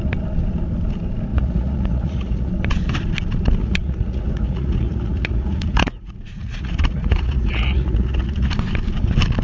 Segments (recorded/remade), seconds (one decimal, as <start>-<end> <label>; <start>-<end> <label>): 0.0-1.3 recorded; 1.3-2.5 remade; 2.5-3.6 recorded; 3.6-8.5 remade; 8.5-9.4 recorded

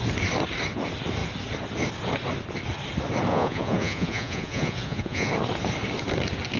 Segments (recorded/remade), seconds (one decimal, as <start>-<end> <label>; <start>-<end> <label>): 0.0-3.3 recorded; 3.3-5.3 remade; 5.3-6.6 recorded

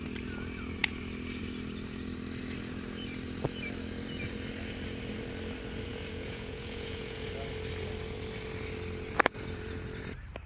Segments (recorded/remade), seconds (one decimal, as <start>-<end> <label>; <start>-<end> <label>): 0.0-5.9 recorded; 5.9-7.3 remade; 7.3-10.5 recorded